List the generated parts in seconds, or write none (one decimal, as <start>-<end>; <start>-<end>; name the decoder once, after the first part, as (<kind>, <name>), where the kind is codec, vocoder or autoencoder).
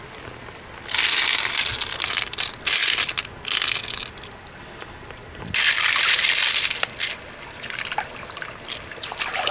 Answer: none